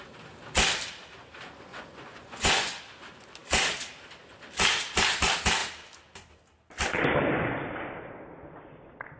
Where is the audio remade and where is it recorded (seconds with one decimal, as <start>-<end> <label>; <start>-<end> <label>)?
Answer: 0.0-1.7 recorded; 1.7-2.8 remade; 2.8-9.2 recorded